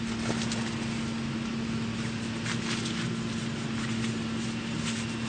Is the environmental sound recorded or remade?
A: recorded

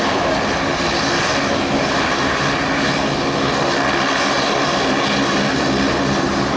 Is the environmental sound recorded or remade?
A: recorded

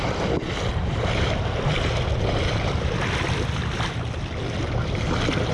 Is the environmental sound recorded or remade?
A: remade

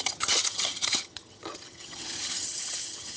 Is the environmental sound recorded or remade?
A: remade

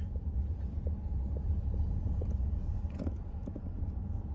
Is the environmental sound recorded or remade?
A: remade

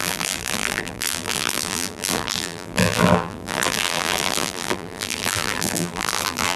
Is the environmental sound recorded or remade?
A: remade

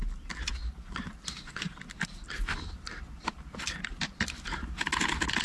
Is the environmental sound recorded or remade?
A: recorded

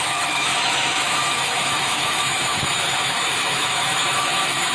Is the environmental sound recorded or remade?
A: remade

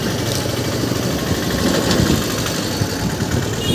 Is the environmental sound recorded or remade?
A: recorded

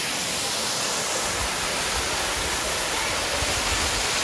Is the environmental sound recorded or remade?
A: recorded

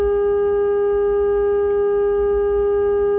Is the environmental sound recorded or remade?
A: recorded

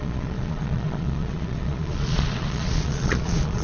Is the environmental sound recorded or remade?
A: remade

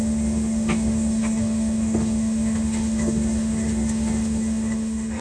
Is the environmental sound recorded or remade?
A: remade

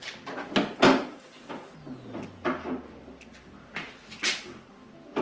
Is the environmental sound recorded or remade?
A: recorded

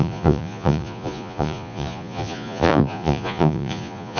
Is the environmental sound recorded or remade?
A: remade